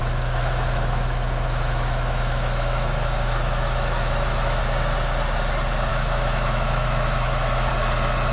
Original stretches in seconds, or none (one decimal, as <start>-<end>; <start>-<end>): 4.6-5.9; 7.7-8.3